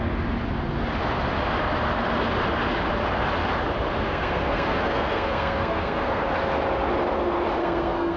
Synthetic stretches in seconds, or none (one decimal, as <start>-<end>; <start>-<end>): 4.0-6.2; 7.6-8.2